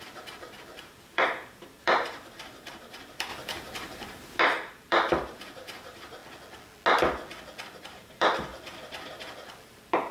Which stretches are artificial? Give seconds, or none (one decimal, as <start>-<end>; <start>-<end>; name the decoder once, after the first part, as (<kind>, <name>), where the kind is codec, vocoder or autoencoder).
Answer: 0.0-6.2 (vocoder, BigVGAN v2); 7.8-8.5; 9.7-10.1